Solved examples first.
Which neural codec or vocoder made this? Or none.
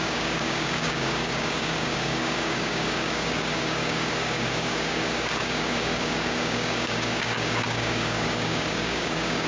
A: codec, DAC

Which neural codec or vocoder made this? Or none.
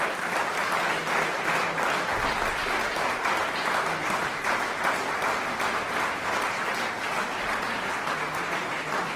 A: none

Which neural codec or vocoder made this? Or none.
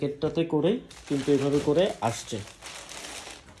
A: none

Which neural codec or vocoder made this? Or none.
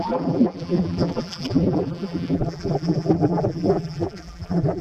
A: vocoder, BigVGAN v2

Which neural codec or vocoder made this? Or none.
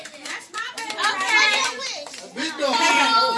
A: vocoder, BigVGAN v2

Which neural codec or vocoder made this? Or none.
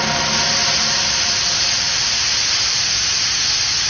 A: none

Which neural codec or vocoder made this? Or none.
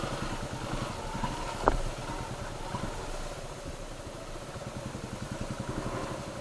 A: none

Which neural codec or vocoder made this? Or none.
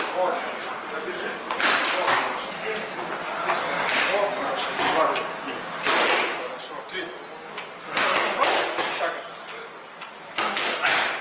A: none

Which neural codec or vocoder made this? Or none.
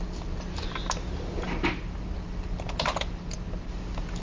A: none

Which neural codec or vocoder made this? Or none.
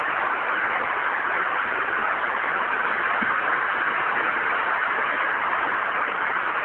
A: none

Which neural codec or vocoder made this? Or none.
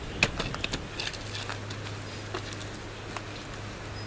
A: none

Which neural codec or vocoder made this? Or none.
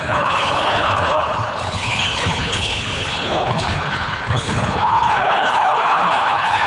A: codec, HILCodec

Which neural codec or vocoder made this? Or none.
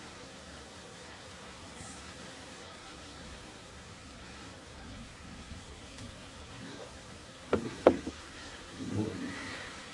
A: codec, SNAC